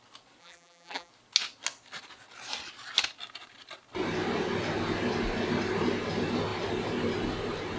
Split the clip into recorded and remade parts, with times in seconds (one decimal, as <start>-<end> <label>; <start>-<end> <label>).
0.0-0.4 recorded; 0.4-1.1 remade; 1.1-7.8 recorded